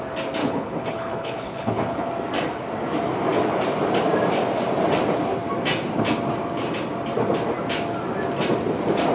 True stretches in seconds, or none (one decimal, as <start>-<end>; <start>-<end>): 0.0-0.4; 2.1-9.1